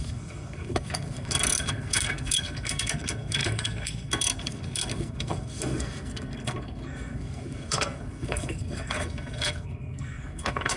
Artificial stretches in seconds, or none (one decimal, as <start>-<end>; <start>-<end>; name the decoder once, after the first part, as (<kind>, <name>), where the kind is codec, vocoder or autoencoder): 0.0-10.8 (codec, SNAC)